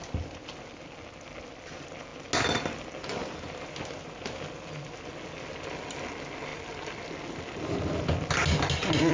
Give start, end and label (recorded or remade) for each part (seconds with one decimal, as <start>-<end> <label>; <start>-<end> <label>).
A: 0.0-9.1 recorded